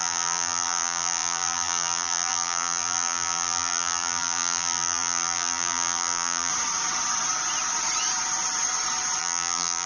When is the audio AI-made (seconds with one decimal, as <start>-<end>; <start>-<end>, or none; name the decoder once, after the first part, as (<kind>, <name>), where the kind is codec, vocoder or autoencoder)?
0.0-6.5 (vocoder, BigVGAN v2); 9.2-9.9